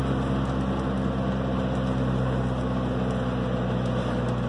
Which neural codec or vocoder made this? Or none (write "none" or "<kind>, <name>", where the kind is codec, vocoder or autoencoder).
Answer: none